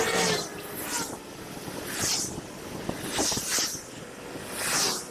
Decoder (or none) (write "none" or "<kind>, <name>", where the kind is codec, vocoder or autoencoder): none